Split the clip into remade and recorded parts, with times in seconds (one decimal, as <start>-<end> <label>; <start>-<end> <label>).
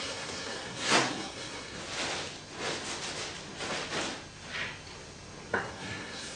0.0-1.8 remade; 1.8-5.5 recorded; 5.5-6.4 remade